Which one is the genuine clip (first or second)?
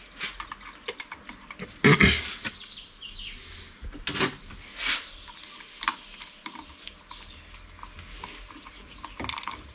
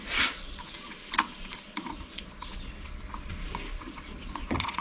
first